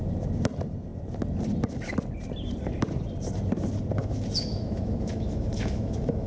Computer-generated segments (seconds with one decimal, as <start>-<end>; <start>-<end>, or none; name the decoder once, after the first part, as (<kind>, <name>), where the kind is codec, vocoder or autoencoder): 4.0-6.3 (autoencoder, DAC-VAE)